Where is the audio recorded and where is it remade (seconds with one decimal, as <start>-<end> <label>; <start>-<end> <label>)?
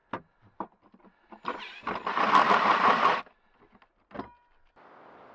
0.0-5.3 recorded